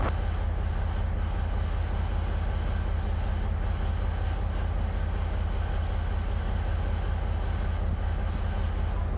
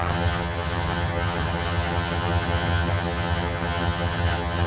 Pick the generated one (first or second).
second